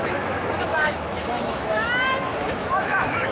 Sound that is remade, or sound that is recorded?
remade